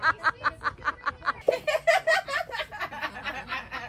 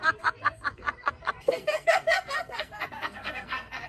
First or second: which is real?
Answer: first